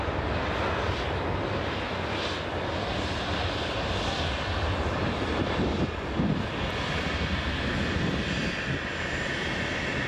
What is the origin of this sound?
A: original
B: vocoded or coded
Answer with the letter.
A